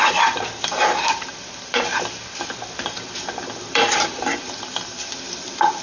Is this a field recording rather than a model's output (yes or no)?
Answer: no